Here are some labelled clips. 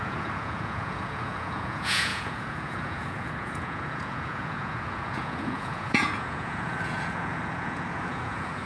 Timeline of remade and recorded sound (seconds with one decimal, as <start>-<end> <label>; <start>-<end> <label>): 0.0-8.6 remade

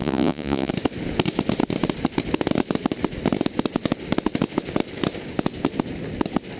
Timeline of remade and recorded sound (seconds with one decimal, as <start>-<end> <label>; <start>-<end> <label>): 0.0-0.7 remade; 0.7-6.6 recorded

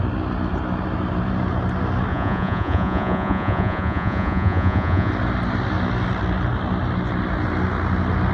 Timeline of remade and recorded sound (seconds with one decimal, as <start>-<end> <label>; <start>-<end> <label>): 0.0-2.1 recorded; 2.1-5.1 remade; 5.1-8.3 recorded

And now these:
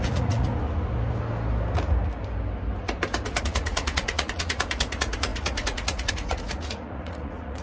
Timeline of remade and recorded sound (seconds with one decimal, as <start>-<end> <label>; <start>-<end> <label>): 0.0-0.5 remade; 0.5-3.4 recorded; 3.4-7.6 remade

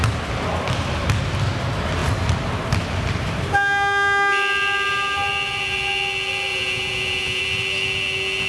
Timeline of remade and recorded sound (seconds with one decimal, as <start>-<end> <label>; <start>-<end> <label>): 0.0-6.5 recorded; 6.5-7.4 remade; 7.4-8.5 recorded

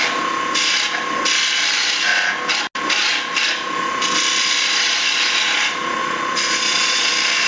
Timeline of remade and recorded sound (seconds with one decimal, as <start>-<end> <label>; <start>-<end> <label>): 0.0-6.0 recorded; 6.0-7.1 remade; 7.1-7.5 recorded